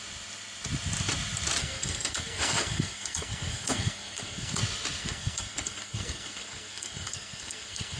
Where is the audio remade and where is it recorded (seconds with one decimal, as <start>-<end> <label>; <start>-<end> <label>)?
0.0-1.6 recorded; 1.6-4.6 remade; 4.6-5.0 recorded; 5.0-8.0 remade